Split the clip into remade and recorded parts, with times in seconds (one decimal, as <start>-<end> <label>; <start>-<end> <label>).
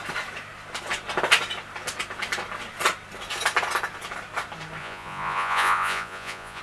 0.0-4.8 recorded; 4.8-6.6 remade